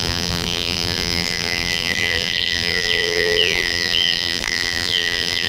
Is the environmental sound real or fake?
fake